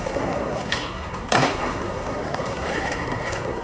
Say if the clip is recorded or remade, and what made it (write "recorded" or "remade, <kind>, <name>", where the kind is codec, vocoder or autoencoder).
remade, codec, SNAC